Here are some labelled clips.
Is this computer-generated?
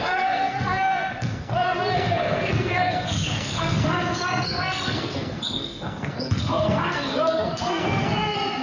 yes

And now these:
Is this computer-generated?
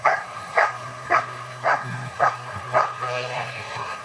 yes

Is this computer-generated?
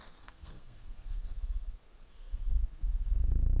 yes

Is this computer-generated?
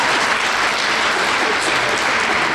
no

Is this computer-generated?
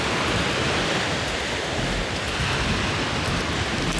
no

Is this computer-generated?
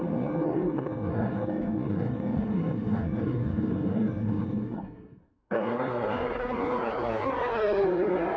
yes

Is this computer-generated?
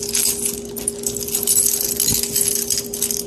no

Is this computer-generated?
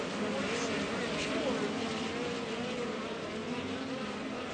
no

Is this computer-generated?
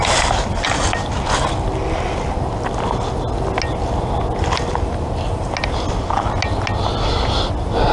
no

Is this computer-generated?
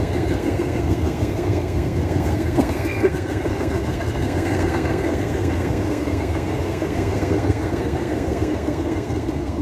yes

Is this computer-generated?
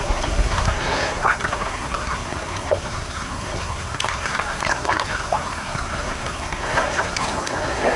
yes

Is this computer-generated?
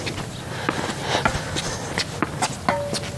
no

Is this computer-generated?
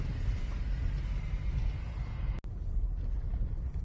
no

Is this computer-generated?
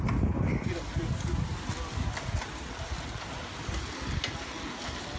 no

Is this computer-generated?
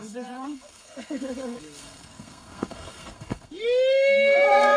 yes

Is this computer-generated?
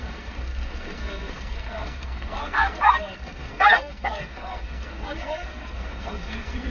yes